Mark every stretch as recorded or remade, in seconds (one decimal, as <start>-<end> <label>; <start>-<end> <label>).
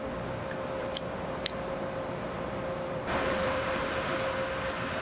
0.0-0.8 recorded; 0.8-3.8 remade; 3.8-5.0 recorded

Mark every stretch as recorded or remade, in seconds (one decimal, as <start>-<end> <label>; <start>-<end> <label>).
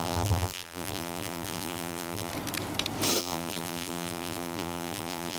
0.0-2.3 remade; 2.3-3.2 recorded; 3.2-5.4 remade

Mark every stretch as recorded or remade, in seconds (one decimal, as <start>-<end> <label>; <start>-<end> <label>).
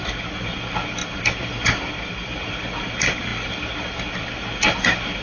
0.0-1.0 recorded; 1.0-2.5 remade; 2.5-5.2 recorded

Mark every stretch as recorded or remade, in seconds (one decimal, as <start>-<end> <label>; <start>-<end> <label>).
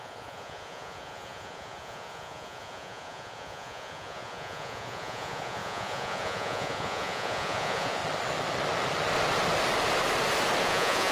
0.0-8.0 remade; 8.0-10.6 recorded; 10.6-11.1 remade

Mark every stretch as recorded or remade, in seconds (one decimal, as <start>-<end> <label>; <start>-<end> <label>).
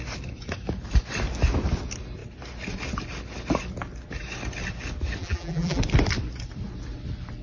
0.0-5.2 recorded; 5.2-5.8 remade; 5.8-7.4 recorded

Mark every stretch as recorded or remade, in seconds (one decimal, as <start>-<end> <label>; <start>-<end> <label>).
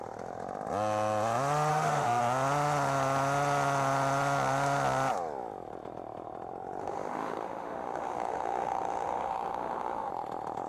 0.0-1.7 recorded; 1.7-2.2 remade; 2.2-6.8 recorded; 6.8-10.1 remade; 10.1-10.7 recorded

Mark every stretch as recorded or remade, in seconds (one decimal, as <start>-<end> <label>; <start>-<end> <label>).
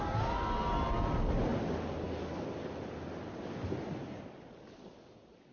0.0-5.5 recorded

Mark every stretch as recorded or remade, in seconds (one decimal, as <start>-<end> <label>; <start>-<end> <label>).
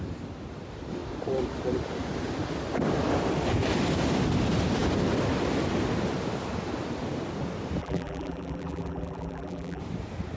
0.0-7.8 recorded; 7.8-9.8 remade; 9.8-10.4 recorded